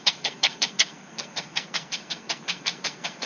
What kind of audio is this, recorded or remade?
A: remade